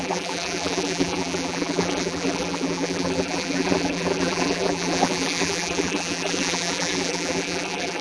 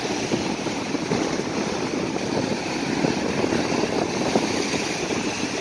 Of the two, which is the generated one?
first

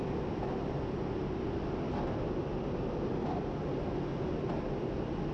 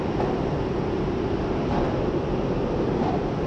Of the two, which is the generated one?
second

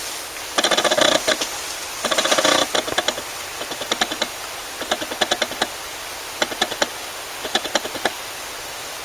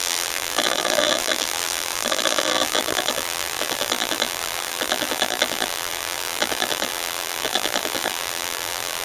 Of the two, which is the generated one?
second